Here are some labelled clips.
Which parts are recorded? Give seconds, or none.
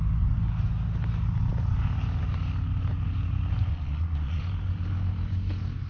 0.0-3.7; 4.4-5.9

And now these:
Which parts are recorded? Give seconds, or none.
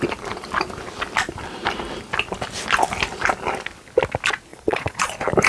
0.0-4.5; 5.1-5.5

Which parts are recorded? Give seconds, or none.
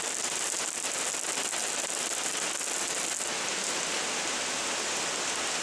0.0-5.6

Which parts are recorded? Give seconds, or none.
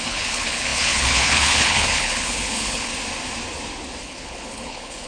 2.9-4.0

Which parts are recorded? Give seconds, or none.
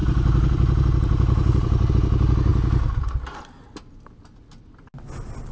1.9-5.5